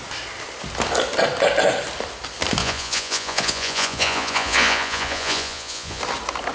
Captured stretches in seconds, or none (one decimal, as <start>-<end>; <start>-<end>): 0.0-2.6; 6.0-6.5